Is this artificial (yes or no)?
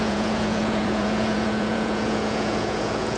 yes